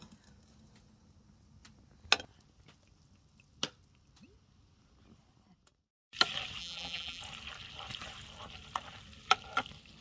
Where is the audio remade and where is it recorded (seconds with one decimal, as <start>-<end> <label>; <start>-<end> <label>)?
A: 0.0-6.6 recorded; 6.6-7.2 remade; 7.2-10.0 recorded